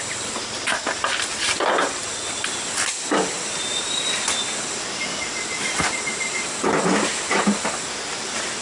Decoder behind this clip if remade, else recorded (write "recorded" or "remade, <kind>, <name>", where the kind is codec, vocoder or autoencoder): recorded